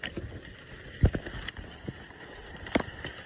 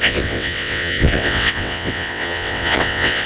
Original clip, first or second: first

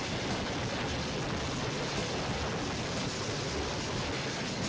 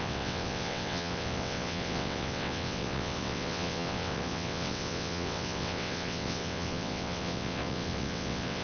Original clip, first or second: first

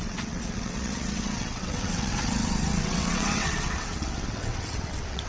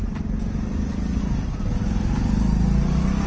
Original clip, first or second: second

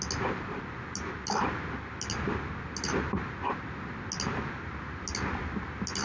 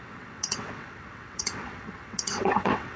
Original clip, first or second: first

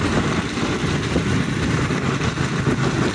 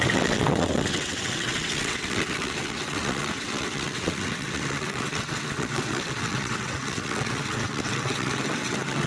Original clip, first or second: first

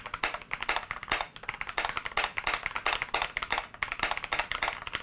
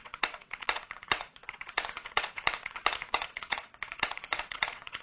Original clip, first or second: first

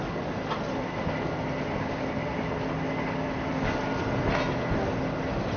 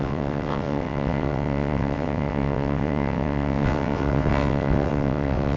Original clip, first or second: first